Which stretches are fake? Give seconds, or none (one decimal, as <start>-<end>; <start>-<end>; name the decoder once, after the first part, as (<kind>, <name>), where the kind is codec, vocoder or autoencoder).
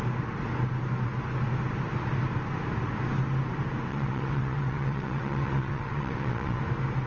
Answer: 3.9-6.6 (vocoder, WaveNeXt)